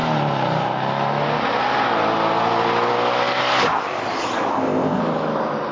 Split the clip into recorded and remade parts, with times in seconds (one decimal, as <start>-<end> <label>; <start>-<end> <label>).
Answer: 0.0-4.5 recorded; 4.5-5.0 remade; 5.0-5.7 recorded